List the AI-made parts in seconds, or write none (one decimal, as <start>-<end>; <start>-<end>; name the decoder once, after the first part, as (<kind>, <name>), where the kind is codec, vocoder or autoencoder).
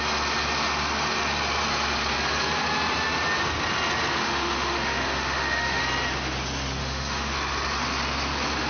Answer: 4.2-5.8 (autoencoder, DAC-VAE); 6.8-7.3